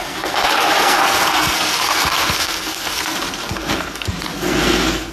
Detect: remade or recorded remade